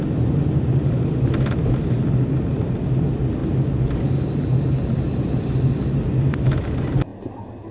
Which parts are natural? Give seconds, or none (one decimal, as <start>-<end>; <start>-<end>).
0.0-7.7